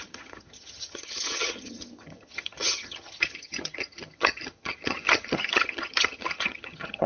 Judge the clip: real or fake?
fake